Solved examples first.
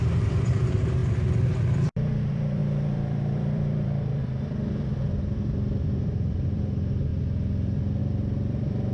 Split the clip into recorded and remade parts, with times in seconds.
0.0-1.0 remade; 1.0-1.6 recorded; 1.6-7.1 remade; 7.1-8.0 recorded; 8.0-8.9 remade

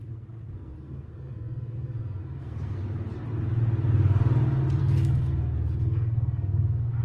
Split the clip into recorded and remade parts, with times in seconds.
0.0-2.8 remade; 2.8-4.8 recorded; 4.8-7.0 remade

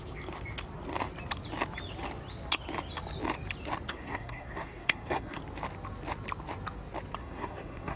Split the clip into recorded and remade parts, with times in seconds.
0.0-3.9 recorded; 3.9-5.4 remade; 5.4-7.2 recorded; 7.2-8.0 remade

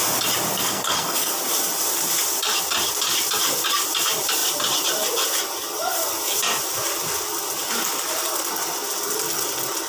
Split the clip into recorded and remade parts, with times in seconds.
0.0-0.5 recorded; 0.5-1.3 remade; 1.3-9.9 recorded